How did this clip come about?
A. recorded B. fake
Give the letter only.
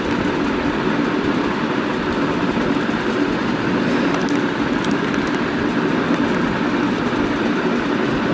A